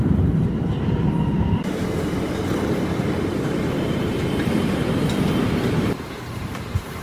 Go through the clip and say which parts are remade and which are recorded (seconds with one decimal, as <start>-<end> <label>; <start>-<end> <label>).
0.0-1.6 remade; 1.6-5.6 recorded; 5.6-7.0 remade